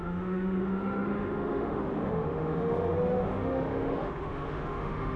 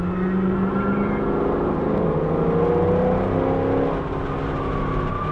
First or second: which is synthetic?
first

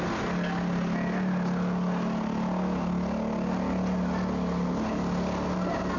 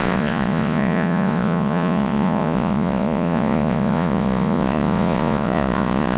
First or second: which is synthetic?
second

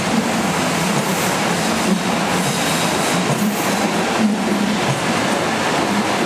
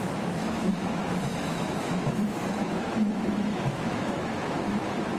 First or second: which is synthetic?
second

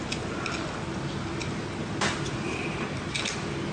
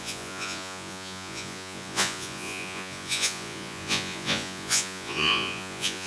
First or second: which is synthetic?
second